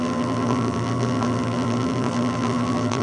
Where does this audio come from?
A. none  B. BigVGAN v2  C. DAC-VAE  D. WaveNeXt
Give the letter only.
B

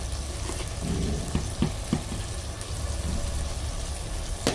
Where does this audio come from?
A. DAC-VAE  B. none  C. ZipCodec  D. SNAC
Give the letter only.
B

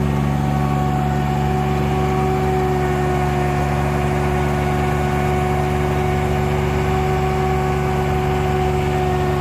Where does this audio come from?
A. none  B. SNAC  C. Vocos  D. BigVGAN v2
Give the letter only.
A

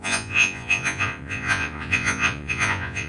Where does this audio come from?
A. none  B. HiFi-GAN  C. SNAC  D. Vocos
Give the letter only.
D